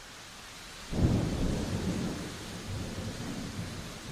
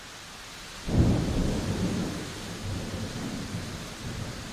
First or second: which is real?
second